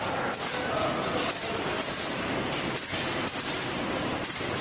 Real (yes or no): yes